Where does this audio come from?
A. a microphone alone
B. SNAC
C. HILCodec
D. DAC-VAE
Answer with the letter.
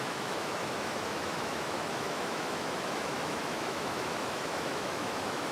D